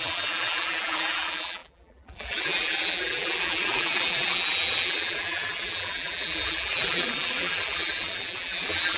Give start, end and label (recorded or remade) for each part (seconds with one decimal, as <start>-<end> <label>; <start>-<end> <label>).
0.0-9.0 remade